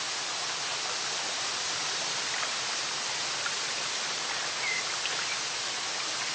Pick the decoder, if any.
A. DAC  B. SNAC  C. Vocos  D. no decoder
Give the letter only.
D